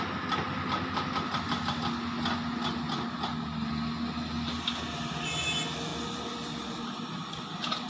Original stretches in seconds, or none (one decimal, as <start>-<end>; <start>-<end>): 0.0-7.9